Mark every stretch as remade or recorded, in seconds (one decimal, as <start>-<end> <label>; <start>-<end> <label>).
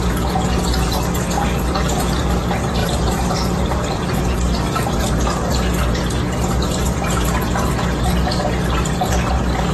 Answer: 0.0-2.8 recorded; 2.8-4.2 remade; 4.2-9.7 recorded